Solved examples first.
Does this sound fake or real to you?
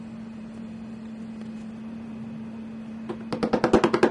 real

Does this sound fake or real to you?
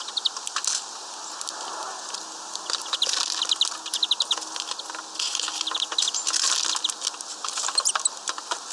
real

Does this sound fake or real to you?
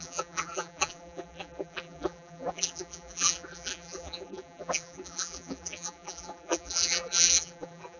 fake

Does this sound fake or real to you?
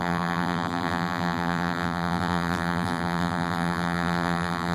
fake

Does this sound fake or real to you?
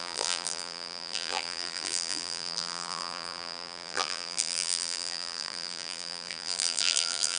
fake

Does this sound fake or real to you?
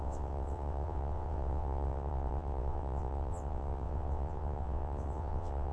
fake